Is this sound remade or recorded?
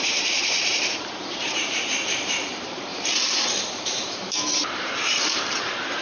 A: remade